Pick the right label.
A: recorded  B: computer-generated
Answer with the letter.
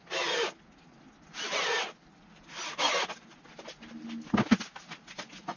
A